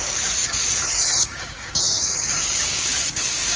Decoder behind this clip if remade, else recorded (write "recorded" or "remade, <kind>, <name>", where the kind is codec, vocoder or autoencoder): remade, codec, DAC